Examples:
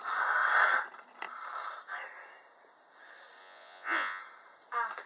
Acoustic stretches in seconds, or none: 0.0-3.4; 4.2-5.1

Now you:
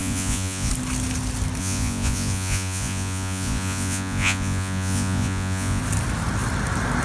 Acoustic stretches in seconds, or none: 0.7-1.6; 5.8-7.0

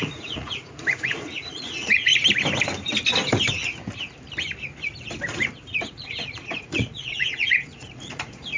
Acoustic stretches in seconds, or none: 2.1-5.7

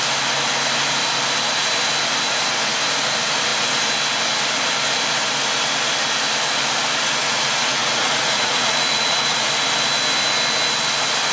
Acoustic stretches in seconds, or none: 0.0-7.2; 9.5-11.3

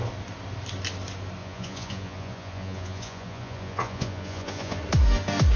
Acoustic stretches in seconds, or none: 0.0-1.4; 4.8-5.6